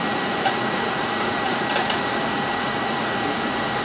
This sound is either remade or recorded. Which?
remade